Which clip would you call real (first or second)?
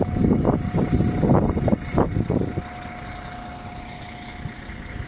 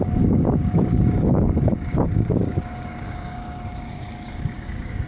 first